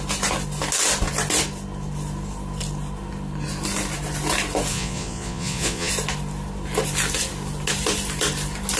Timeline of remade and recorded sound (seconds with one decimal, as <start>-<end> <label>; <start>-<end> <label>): 0.0-4.7 recorded; 4.7-5.9 remade; 5.9-8.8 recorded